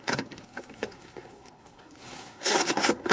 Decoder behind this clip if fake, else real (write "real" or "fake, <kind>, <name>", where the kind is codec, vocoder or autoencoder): fake, codec, SNAC